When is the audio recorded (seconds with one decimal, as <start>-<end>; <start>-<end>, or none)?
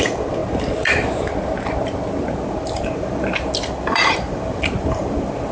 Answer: 0.4-2.5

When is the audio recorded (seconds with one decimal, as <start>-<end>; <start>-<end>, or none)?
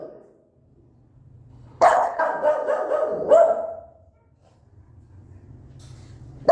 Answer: 0.0-1.5; 2.2-6.5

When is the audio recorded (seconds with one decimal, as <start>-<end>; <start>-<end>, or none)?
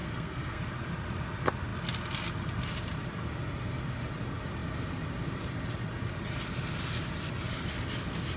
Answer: 0.6-8.4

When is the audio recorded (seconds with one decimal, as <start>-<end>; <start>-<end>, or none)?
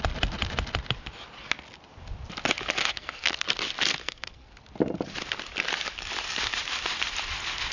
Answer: 0.0-2.8; 3.3-4.0; 4.5-7.7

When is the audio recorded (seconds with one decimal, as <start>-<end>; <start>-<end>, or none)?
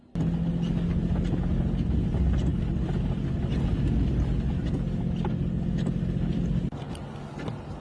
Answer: 0.0-7.8